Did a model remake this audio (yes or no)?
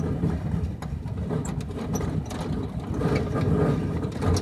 no